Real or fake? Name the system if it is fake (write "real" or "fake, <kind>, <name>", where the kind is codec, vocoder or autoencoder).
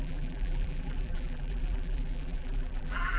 fake, vocoder, BigVGAN v2